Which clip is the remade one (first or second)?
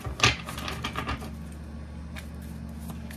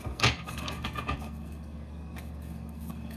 second